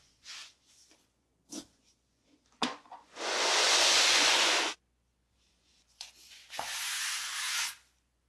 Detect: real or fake fake